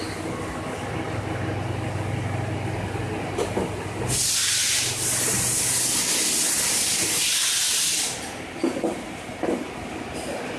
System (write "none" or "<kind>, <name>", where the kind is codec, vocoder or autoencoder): none